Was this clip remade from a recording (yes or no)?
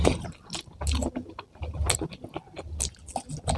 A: no